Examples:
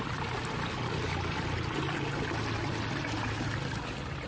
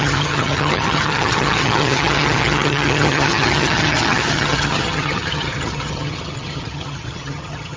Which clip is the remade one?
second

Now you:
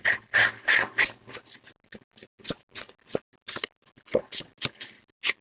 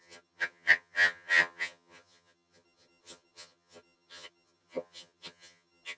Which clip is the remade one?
second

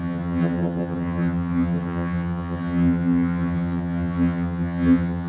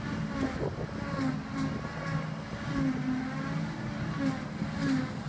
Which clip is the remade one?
first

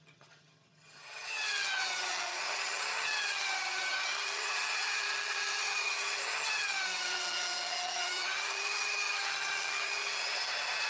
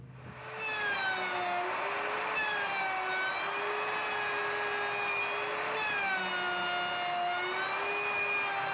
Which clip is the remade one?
first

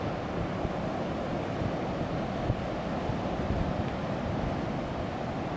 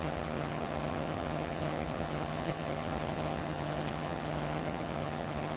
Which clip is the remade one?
second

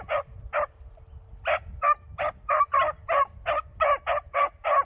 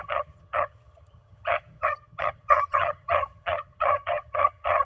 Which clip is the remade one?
second